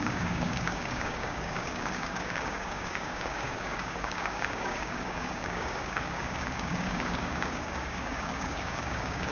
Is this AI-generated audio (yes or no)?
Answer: yes